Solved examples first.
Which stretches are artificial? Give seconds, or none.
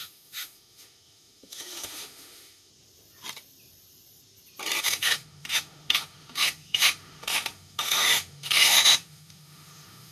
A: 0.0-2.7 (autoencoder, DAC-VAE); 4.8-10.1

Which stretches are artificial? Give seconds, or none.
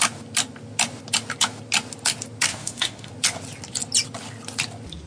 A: 2.5-3.1 (autoencoder, DAC-VAE)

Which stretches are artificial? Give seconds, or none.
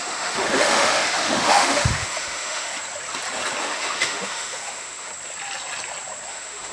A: 0.0-2.7 (autoencoder, DAC-VAE); 3.6-5.1; 6.3-6.7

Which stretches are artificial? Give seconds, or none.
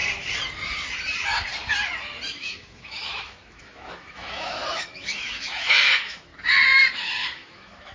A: 2.3-6.3 (autoencoder, DAC-VAE); 6.9-7.9